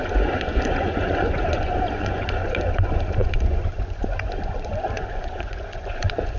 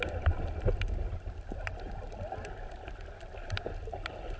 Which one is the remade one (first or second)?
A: first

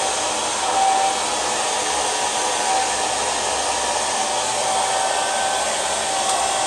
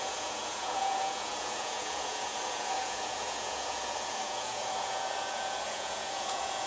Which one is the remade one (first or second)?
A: second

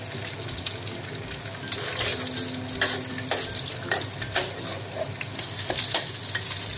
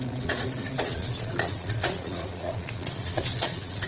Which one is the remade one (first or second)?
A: second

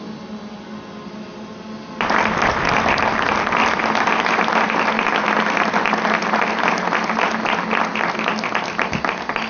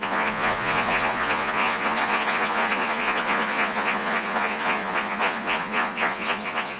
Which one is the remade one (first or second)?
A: second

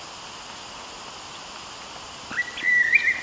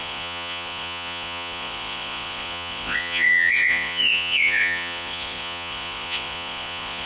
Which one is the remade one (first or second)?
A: second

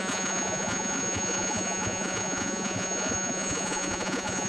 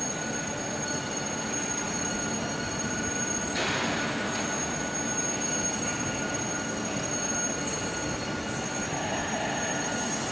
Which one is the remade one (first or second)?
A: first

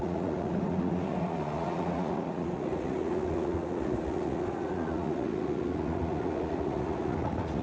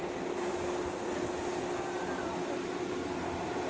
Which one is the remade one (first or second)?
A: first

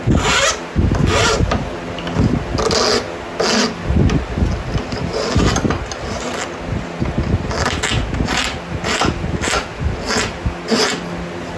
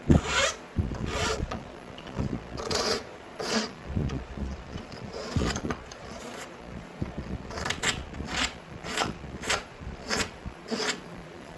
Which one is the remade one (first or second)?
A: second